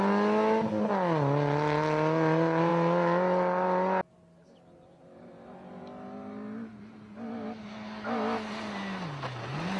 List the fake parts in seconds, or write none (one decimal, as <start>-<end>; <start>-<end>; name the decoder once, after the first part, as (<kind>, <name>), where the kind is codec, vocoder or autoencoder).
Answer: none